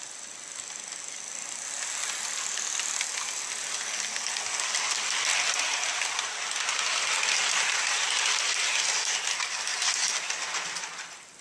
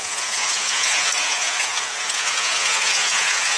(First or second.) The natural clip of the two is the first